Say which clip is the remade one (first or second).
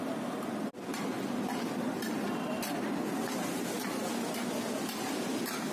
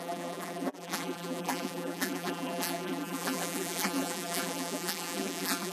second